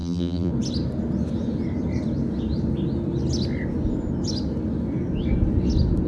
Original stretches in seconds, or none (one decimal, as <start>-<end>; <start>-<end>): 0.5-6.1